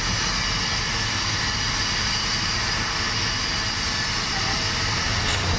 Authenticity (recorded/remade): recorded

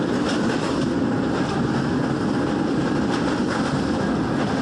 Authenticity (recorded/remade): recorded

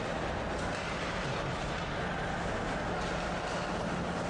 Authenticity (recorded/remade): recorded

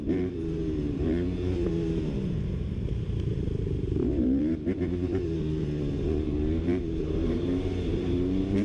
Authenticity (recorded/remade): remade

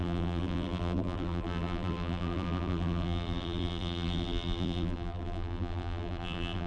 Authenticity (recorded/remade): remade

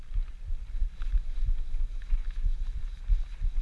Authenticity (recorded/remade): recorded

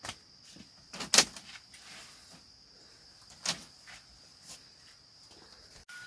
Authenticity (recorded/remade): recorded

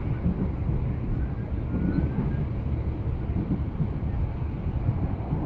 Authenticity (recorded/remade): recorded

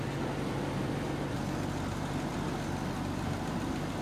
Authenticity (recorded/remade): recorded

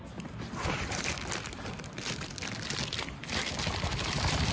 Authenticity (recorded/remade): remade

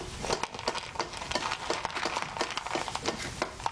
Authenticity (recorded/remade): recorded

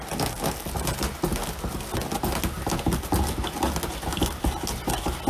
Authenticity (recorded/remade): recorded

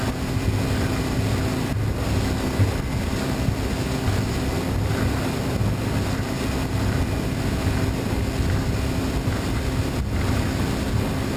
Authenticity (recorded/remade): recorded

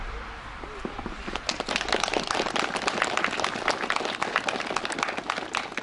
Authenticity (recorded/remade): recorded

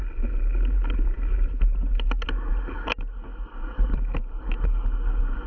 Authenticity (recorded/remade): recorded